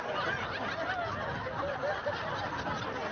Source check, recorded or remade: recorded